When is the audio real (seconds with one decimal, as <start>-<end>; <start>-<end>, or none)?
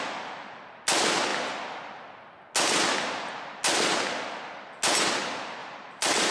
0.0-5.6